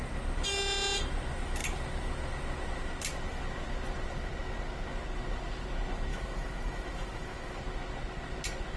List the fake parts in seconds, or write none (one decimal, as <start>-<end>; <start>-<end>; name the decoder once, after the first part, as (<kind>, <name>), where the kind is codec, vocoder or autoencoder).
6.1-7.6 (autoencoder, DAC-VAE)

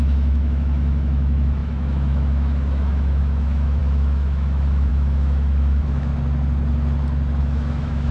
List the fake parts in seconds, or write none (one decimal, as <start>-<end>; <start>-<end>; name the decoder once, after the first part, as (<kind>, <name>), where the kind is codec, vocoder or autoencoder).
0.0-6.1 (autoencoder, DAC-VAE); 7.4-8.1

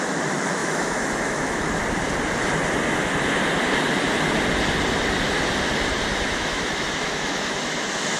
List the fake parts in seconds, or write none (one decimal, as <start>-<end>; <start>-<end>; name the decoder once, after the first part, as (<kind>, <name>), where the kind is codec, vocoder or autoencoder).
0.0-1.8 (autoencoder, DAC-VAE); 6.1-8.2